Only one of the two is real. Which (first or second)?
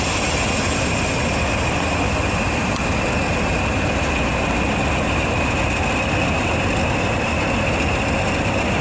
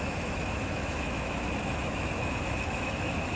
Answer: first